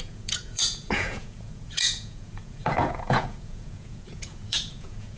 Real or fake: fake